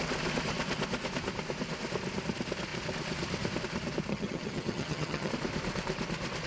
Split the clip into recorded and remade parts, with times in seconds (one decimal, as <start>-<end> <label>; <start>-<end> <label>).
0.0-4.1 recorded; 4.1-5.3 remade; 5.3-6.5 recorded